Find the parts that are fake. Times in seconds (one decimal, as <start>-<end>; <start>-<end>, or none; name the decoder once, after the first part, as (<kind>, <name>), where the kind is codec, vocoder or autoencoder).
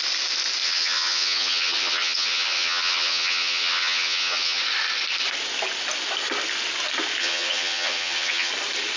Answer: 0.6-4.6 (vocoder, HiFi-GAN); 7.2-8.5